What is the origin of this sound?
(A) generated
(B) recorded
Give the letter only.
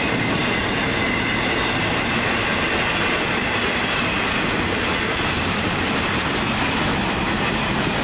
B